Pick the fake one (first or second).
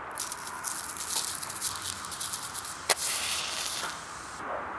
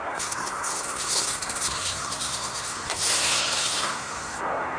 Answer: second